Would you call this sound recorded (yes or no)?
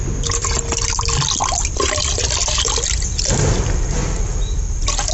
yes